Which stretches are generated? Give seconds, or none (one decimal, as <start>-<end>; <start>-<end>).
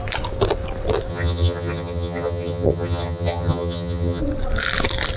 1.1-4.2